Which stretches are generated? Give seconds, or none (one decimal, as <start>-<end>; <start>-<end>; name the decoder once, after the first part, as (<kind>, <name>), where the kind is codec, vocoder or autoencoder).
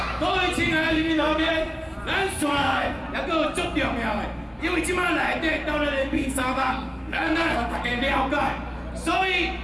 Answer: 0.9-1.5 (codec, SNAC); 2.4-3.0; 6.0-8.0